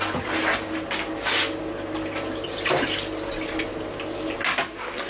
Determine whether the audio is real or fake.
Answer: real